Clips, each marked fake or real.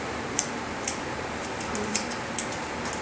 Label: fake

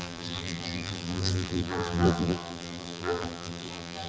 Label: fake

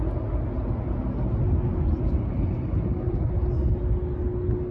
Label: real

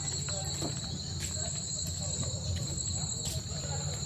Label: real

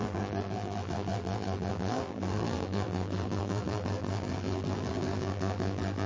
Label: fake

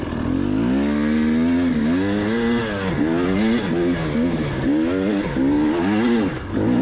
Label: real